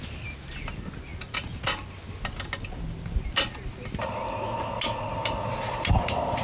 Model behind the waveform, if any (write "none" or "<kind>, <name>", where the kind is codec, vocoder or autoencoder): none